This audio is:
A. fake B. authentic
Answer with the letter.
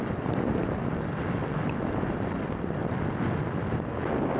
B